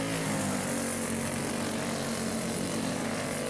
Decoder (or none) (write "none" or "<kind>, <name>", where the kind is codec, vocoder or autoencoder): none